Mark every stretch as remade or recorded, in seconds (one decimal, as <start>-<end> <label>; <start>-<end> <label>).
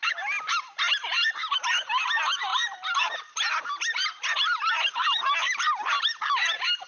0.0-6.9 recorded